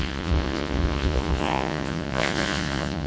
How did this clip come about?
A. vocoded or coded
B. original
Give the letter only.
A